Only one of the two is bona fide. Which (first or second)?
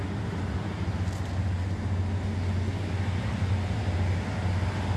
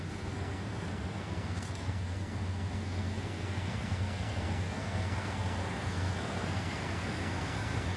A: first